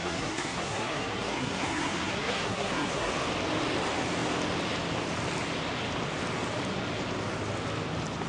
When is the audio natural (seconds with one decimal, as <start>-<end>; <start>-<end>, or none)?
3.1-8.3